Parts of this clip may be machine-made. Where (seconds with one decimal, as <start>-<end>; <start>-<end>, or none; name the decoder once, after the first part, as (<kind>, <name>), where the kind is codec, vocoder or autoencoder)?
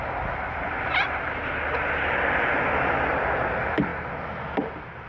none